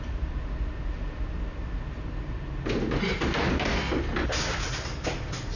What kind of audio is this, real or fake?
real